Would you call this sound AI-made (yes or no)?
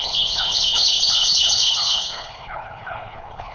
yes